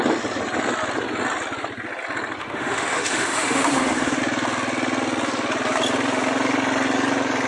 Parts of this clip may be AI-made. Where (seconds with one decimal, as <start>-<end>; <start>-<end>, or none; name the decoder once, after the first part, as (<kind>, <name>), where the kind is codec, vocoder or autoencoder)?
2.4-4.2 (autoencoder, DAC-VAE)